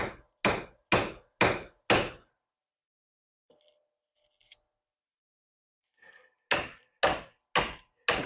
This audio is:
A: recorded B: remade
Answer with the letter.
A